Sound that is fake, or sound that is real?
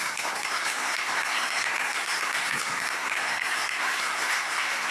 fake